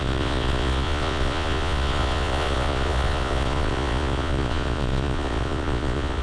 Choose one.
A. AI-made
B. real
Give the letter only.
A